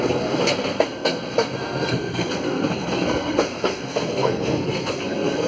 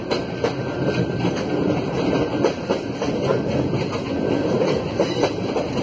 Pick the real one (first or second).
second